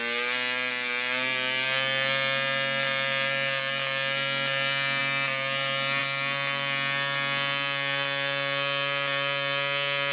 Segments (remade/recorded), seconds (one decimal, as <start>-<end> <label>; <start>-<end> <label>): 0.0-10.1 recorded